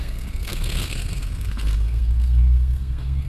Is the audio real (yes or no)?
no